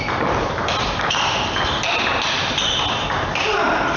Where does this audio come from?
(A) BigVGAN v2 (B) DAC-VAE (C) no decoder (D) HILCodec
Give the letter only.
C